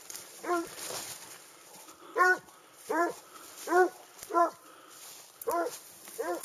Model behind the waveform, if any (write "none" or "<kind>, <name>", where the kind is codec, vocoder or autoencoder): vocoder, BigVGAN v2